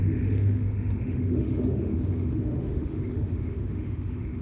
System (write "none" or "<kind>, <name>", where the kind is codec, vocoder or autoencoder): autoencoder, DAC-VAE